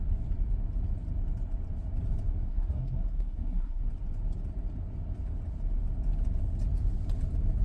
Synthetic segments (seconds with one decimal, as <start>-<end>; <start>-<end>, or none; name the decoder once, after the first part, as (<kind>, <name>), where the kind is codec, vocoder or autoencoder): 2.5-3.8 (codec, SNAC)